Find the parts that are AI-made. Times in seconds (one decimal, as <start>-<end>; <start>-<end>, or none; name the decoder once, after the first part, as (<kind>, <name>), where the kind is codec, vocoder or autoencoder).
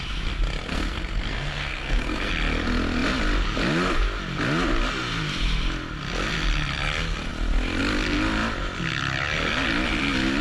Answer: 0.7-2.3 (codec, SNAC)